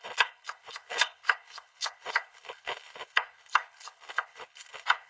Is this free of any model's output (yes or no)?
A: no